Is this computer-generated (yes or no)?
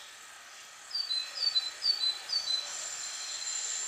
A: no